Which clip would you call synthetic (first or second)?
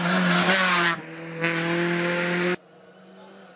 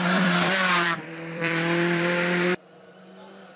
second